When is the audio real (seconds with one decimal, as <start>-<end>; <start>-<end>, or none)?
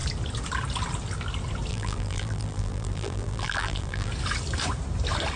0.0-1.7; 4.1-5.4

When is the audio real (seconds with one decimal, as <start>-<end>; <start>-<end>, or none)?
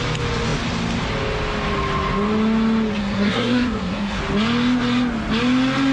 0.0-3.0; 4.2-5.9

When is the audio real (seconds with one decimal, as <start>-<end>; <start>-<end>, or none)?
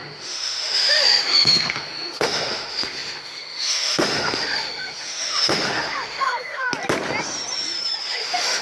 6.7-8.0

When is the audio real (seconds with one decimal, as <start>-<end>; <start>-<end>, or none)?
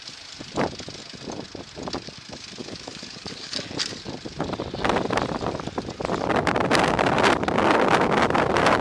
0.0-2.6; 3.7-8.8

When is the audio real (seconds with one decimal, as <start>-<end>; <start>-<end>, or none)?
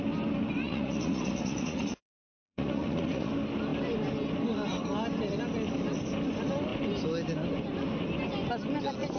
0.0-0.6; 3.3-9.2